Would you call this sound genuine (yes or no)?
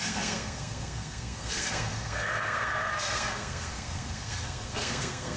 no